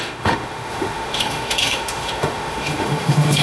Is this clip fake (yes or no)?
yes